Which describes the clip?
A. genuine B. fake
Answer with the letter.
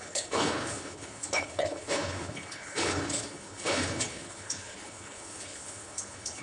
B